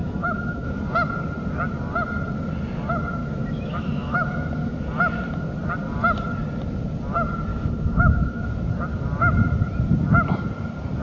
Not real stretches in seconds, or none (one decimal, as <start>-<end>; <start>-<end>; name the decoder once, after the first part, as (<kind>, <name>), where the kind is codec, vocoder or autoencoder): 0.0-0.8 (autoencoder, DAC-VAE); 3.2-4.8; 7.5-8.4